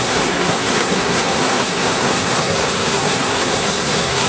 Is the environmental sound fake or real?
fake